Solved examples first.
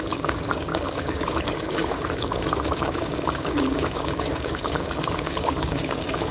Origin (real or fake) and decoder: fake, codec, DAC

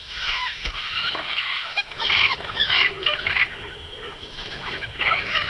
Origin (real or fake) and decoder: fake, autoencoder, DAC-VAE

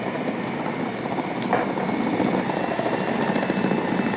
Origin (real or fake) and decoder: real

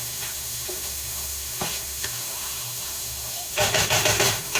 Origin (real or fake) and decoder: fake, autoencoder, DAC-VAE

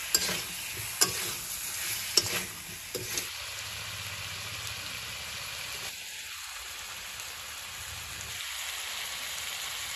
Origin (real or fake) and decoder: real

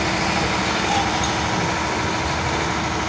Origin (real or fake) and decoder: real